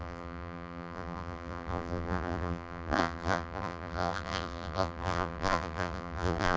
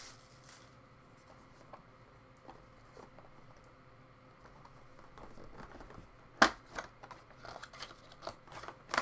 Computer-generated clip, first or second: first